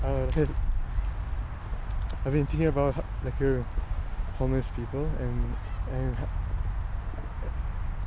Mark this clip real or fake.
real